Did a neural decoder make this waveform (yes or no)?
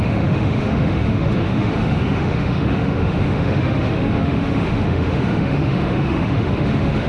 yes